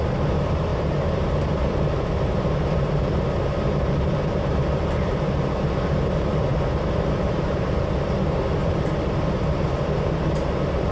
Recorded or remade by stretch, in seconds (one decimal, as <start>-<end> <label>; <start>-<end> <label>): 0.0-6.5 remade; 6.5-7.2 recorded; 7.2-8.6 remade; 8.6-9.3 recorded; 9.3-10.9 remade